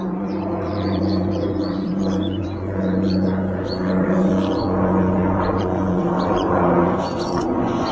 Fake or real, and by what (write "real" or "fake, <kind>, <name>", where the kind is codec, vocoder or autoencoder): fake, vocoder, Vocos